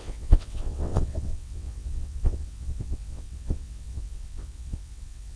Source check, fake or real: fake